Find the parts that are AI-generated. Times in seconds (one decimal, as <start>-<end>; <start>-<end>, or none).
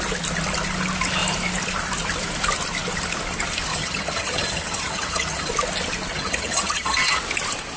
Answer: 3.7-5.5; 6.1-7.2